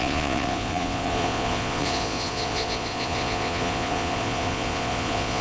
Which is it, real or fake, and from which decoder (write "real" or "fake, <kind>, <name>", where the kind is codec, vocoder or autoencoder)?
fake, vocoder, Vocos